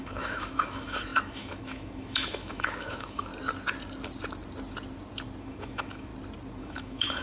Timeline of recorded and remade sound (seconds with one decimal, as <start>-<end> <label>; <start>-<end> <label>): 0.0-3.3 remade; 3.3-5.4 recorded; 5.4-6.1 remade; 6.1-6.6 recorded; 6.6-7.2 remade